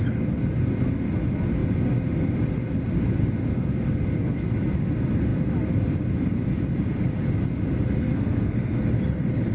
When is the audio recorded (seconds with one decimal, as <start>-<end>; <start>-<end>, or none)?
0.0-8.0; 8.9-9.5

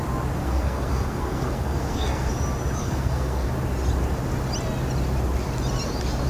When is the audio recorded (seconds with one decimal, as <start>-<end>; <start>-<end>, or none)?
0.0-0.4; 2.3-2.8; 3.5-6.3

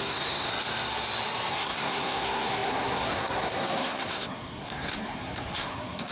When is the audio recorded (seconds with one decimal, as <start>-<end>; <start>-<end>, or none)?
0.5-1.5

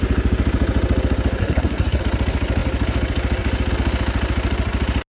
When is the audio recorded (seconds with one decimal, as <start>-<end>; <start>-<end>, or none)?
0.0-1.4; 2.0-5.1

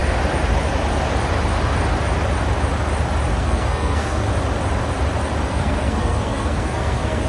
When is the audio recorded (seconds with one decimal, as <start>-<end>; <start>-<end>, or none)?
0.0-3.3; 4.3-5.5

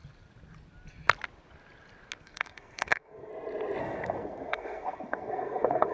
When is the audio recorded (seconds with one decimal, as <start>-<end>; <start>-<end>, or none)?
0.0-2.2; 3.3-3.8